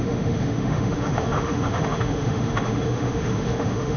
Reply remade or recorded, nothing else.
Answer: remade